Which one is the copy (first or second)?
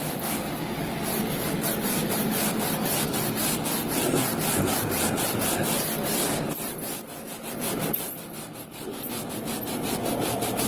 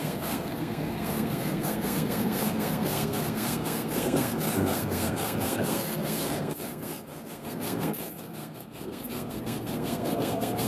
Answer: second